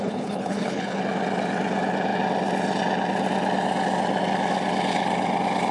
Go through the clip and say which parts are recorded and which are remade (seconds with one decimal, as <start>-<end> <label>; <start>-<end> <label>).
0.0-1.0 remade; 1.0-5.7 recorded